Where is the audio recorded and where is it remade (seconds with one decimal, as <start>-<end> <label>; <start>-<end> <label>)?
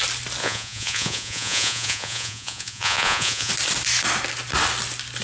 0.0-0.4 recorded; 0.4-3.5 remade; 3.5-5.2 recorded